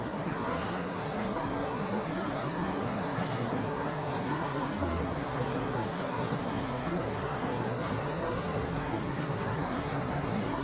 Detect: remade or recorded remade